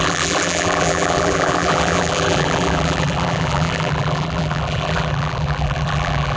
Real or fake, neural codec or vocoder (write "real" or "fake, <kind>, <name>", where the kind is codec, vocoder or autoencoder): fake, vocoder, BigVGAN v2